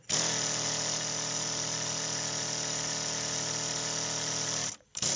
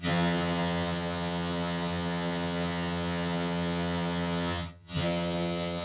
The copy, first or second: second